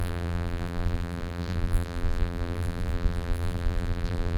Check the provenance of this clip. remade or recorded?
remade